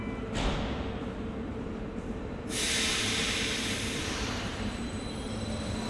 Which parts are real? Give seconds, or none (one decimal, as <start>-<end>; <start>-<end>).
0.0-1.5; 5.0-5.9